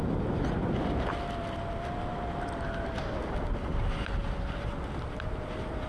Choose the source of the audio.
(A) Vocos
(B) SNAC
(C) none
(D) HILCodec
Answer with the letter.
C